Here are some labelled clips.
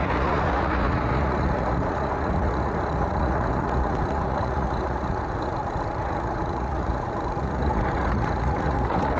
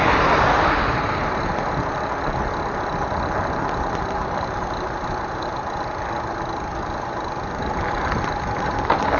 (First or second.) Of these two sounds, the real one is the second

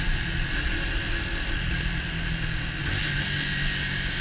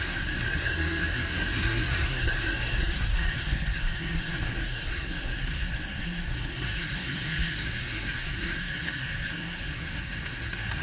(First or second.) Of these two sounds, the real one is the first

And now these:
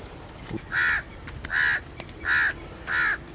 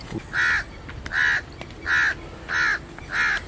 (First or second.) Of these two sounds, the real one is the second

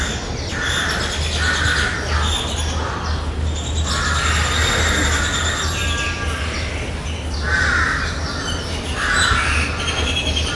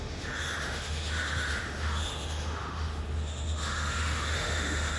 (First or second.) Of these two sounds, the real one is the first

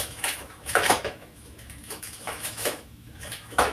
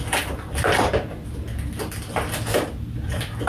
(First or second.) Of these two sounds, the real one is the second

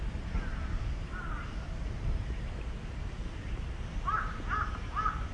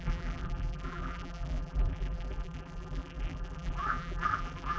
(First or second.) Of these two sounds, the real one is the first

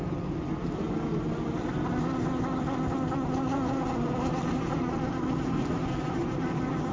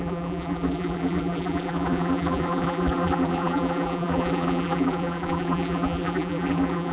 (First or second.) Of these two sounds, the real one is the first